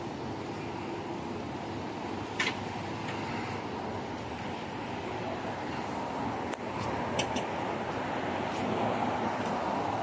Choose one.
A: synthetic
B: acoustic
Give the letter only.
B